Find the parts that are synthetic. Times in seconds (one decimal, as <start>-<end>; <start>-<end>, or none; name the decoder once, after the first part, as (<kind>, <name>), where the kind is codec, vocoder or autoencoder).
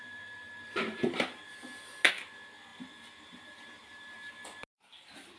0.0-1.0 (vocoder, BigVGAN v2); 2.7-4.3